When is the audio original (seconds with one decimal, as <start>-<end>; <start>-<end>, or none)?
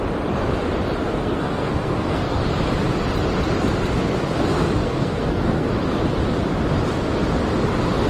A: 0.0-1.0; 2.4-4.8; 5.7-8.1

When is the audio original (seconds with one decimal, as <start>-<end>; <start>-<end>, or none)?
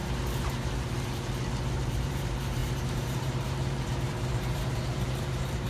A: 0.0-1.8